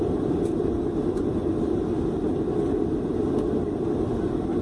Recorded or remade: recorded